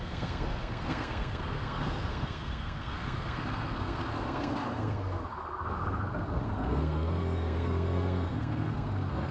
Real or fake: fake